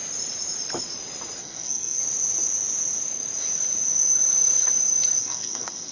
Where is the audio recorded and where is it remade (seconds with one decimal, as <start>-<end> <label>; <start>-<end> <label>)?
0.0-1.4 recorded; 1.4-2.0 remade; 2.0-5.2 recorded; 5.2-5.9 remade